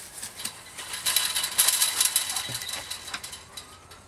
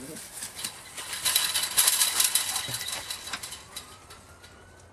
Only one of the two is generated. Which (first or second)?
second